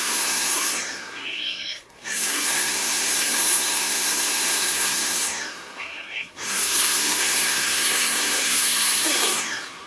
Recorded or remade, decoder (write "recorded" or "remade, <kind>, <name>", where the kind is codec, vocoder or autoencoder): remade, codec, SNAC